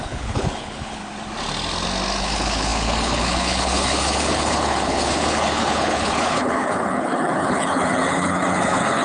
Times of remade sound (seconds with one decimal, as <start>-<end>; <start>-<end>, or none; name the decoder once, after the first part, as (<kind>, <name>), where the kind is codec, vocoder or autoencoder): 0.0-1.0 (codec, HILCodec); 2.2-9.0